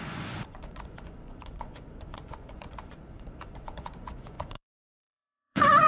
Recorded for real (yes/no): no